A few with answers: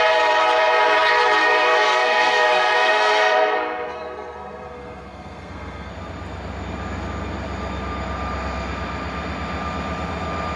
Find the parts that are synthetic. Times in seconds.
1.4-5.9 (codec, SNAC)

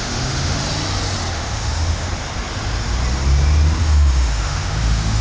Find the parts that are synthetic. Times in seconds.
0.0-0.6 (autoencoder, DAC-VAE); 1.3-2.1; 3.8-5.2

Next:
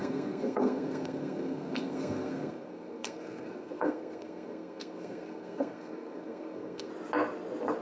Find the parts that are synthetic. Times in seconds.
0.0-6.9 (codec, SNAC)

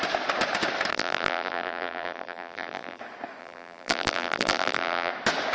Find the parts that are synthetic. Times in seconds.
0.9-3.0 (vocoder, BigVGAN v2); 3.4-5.1

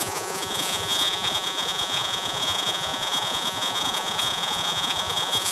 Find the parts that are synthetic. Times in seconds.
0.0-5.5 (vocoder, Vocos)

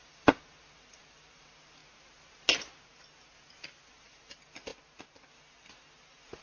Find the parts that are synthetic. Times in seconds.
0.0-1.8 (vocoder, BigVGAN v2); 4.0-4.7; 5.3-6.4

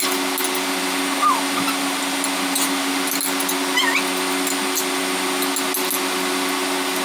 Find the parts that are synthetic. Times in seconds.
none

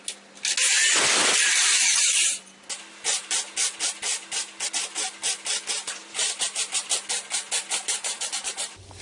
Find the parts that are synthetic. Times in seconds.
none